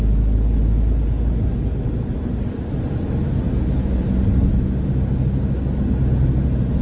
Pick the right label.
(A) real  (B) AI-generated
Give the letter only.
A